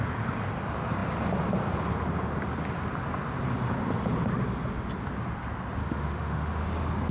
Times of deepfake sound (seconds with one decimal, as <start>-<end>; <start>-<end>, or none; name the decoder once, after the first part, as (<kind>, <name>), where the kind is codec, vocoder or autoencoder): 5.8-6.6 (autoencoder, DAC-VAE)